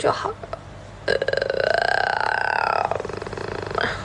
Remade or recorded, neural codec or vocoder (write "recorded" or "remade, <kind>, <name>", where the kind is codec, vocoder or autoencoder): recorded